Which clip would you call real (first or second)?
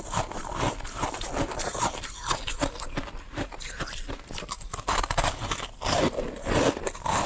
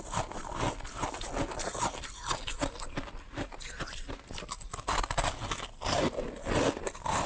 second